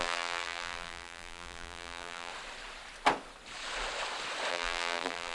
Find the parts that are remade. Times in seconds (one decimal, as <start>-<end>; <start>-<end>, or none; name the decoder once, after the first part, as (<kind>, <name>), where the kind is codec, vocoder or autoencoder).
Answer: 0.0-2.3 (vocoder, BigVGAN v2); 4.5-5.3